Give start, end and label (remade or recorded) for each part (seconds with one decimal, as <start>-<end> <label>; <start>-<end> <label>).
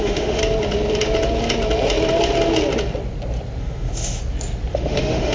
0.0-0.4 remade; 0.4-3.6 recorded; 3.6-4.2 remade; 4.2-4.7 recorded; 4.7-5.3 remade